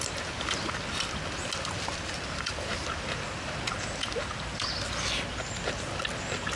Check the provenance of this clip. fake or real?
real